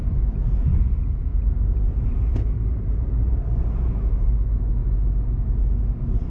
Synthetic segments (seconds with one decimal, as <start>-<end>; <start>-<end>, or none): 0.0-0.7; 1.3-4.3